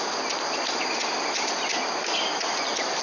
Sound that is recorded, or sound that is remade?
recorded